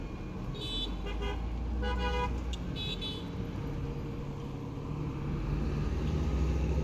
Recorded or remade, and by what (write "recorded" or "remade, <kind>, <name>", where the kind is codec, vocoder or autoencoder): recorded